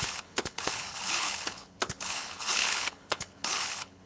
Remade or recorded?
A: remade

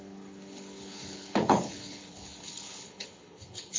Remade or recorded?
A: remade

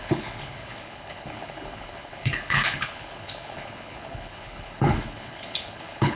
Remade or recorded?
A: remade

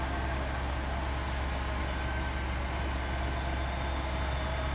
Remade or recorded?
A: recorded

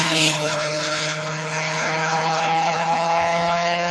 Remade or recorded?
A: remade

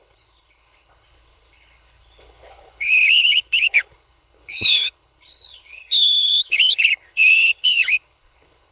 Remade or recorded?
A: remade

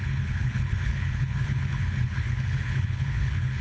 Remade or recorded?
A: remade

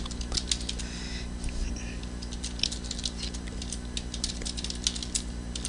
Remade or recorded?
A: recorded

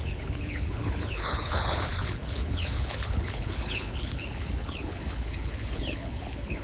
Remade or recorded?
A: remade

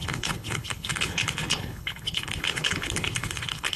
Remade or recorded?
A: remade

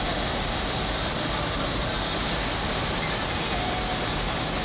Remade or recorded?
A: recorded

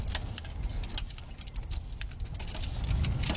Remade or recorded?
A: recorded